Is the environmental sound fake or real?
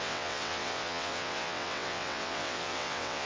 fake